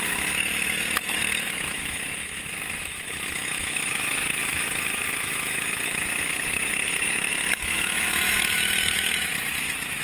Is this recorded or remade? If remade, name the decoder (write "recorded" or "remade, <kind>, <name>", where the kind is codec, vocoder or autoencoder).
remade, autoencoder, DAC-VAE